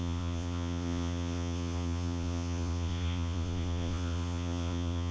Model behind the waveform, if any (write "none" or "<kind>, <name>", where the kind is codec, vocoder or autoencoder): vocoder, Vocos